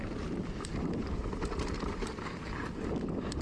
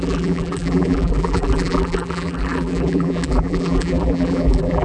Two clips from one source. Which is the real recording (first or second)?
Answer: first